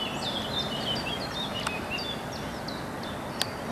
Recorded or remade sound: recorded